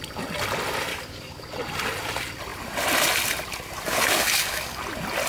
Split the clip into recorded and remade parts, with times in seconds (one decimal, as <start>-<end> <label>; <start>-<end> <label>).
0.0-0.9 recorded; 0.9-1.5 remade; 1.5-3.9 recorded; 3.9-4.8 remade; 4.8-5.3 recorded